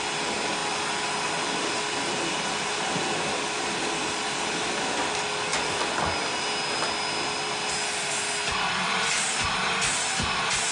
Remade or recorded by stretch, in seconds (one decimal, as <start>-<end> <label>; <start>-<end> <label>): 0.0-10.7 recorded